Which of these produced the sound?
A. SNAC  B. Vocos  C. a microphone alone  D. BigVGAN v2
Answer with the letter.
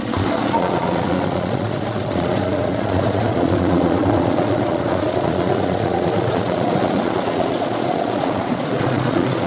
B